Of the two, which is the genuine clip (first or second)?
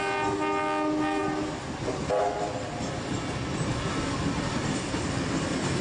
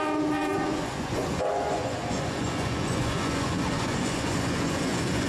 first